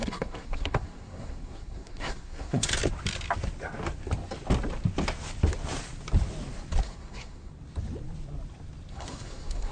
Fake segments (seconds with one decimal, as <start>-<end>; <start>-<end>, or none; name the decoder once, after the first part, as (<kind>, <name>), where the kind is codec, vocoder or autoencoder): 0.0-2.7 (codec, SNAC); 6.8-7.5; 8.9-9.7

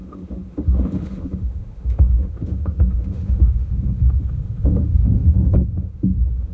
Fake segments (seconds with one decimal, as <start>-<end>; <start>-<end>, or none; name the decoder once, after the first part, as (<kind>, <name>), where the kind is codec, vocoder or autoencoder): 0.0-6.5 (autoencoder, DAC-VAE)

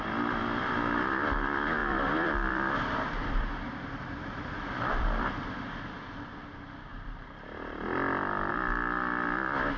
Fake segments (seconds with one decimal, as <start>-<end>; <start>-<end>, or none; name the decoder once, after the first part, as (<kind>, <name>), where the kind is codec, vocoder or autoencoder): 1.8-5.6 (vocoder, BigVGAN v2)

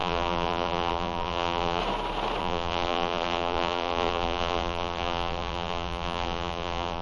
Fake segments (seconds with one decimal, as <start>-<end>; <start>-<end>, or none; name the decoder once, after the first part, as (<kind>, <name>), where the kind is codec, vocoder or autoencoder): 0.0-1.8 (vocoder, BigVGAN v2); 2.4-7.0

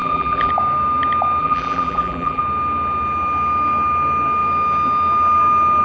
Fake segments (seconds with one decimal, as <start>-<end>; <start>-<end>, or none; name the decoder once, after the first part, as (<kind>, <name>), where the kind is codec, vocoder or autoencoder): 0.0-0.5 (vocoder, BigVGAN v2); 1.4-2.4

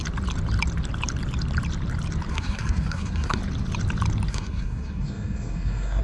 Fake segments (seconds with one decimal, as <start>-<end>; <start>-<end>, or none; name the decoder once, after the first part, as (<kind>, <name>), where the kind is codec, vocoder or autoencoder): 2.3-3.4 (codec, SNAC); 4.3-6.0